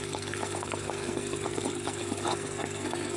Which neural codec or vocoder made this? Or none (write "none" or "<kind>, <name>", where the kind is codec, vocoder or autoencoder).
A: codec, SNAC